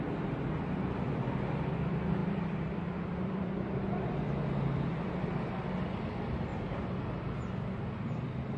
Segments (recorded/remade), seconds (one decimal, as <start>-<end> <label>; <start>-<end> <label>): 0.0-2.2 recorded; 2.2-5.2 remade; 5.2-8.6 recorded